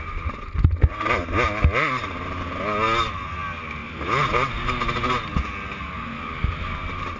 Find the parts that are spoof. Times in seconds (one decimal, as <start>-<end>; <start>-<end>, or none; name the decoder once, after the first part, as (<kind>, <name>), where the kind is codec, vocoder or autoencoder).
none